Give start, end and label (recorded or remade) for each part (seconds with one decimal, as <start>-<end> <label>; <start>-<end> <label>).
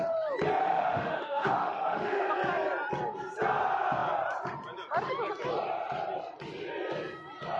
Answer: 0.0-0.6 recorded; 0.6-2.3 remade; 2.3-7.6 recorded